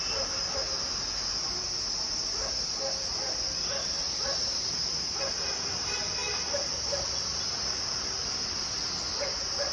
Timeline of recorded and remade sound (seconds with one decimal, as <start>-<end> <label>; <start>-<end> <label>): 0.0-9.7 recorded